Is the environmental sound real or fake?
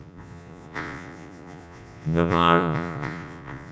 fake